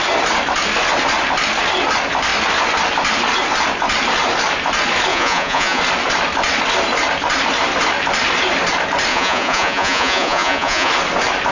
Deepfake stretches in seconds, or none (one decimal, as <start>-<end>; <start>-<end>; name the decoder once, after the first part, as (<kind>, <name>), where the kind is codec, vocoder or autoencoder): 5.1-5.8 (vocoder, Vocos); 9.1-10.9